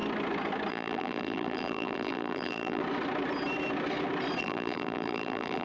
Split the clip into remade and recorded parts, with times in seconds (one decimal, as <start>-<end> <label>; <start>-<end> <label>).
0.0-0.7 recorded; 0.7-2.8 remade; 2.8-4.4 recorded; 4.4-5.6 remade